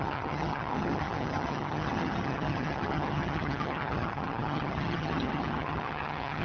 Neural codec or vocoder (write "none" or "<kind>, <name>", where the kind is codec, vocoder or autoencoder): vocoder, HiFi-GAN